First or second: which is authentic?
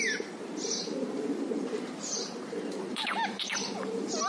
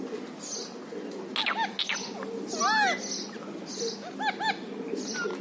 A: second